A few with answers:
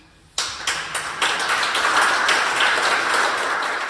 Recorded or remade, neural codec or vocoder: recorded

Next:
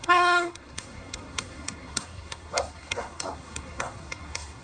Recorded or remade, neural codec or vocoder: remade, codec, SNAC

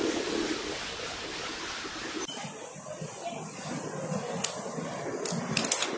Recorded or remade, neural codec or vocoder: recorded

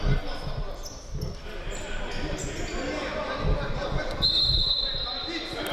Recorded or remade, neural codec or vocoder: recorded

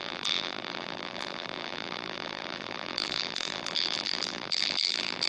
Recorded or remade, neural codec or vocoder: remade, vocoder, BigVGAN v2